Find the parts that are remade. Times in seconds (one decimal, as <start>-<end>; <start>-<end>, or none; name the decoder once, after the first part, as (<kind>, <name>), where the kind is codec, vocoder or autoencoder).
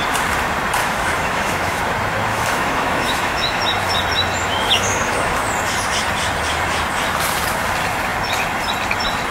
0.8-1.8 (autoencoder, DAC-VAE); 2.3-3.6; 4.4-5.5